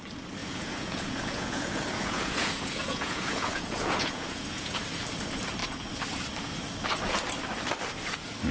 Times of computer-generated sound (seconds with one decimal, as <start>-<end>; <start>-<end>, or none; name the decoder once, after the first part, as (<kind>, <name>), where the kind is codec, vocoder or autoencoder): 0.4-4.8 (vocoder, Vocos)